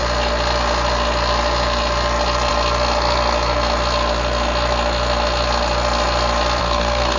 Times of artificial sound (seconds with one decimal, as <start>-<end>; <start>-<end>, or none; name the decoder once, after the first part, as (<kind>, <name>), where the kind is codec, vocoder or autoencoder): 6.6-7.2 (codec, SNAC)